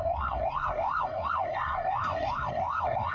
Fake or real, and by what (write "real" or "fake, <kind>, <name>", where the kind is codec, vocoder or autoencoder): fake, codec, SNAC